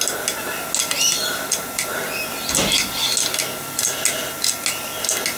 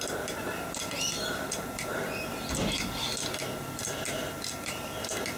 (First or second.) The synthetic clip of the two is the second